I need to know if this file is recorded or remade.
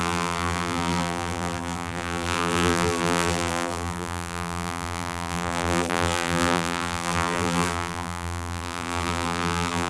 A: remade